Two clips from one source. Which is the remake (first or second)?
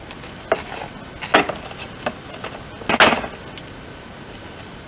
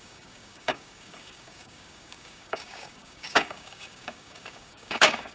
second